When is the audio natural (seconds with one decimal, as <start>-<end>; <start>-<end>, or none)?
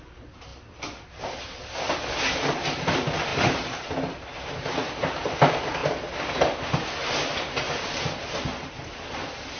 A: 0.0-3.3; 3.9-9.6